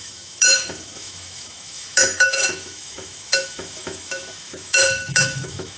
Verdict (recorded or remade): remade